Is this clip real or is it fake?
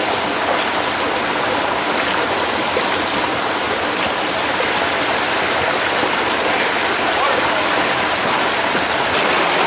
real